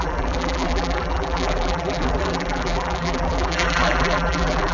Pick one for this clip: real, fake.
fake